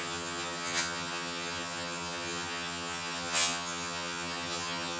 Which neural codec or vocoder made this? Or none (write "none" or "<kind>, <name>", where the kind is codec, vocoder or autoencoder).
vocoder, HiFi-GAN